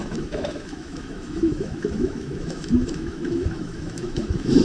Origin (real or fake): fake